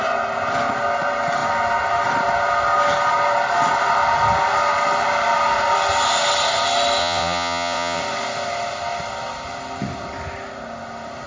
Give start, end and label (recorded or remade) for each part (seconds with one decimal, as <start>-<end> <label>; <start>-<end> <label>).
0.0-7.0 recorded; 7.0-8.0 remade; 8.0-11.3 recorded

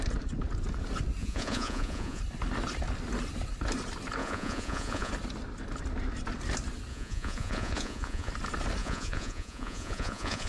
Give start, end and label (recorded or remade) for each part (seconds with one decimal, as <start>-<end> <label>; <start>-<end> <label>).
0.0-1.2 recorded; 1.2-2.2 remade; 2.2-4.2 recorded; 4.2-5.1 remade; 5.1-6.9 recorded; 6.9-8.3 remade; 8.3-8.8 recorded; 8.8-10.5 remade